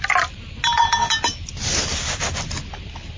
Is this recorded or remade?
recorded